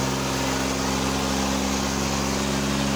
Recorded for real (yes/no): yes